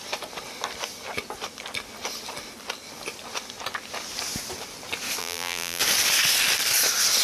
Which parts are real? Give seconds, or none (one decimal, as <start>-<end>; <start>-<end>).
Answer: 0.0-5.2; 5.8-7.2